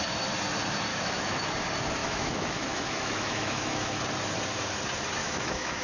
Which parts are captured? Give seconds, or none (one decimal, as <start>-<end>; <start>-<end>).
0.0-0.9; 1.5-2.0; 4.0-5.2

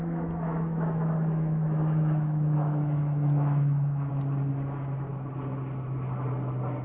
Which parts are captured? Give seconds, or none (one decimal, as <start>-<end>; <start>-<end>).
4.1-6.8